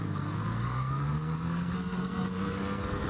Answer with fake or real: fake